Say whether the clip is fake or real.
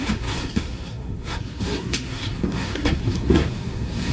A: fake